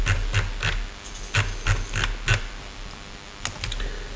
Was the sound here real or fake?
real